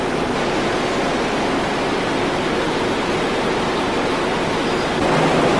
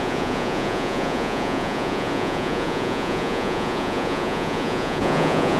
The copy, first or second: second